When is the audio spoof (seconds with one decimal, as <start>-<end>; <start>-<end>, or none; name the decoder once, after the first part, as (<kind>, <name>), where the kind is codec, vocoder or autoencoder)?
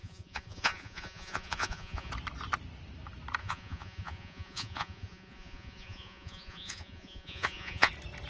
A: 0.0-2.1 (vocoder, Vocos); 3.4-7.9